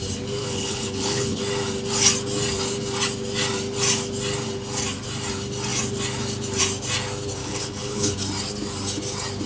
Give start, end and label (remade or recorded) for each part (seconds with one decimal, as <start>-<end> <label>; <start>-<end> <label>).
0.0-0.4 recorded; 0.4-1.4 remade; 1.4-7.4 recorded; 7.4-8.1 remade; 8.1-9.5 recorded